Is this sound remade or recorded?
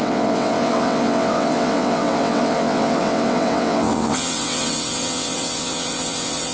remade